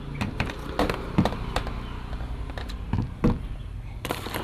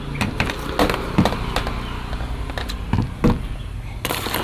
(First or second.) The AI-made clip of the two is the first